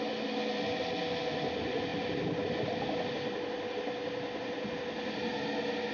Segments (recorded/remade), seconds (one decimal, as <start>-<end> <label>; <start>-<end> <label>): 0.0-5.9 recorded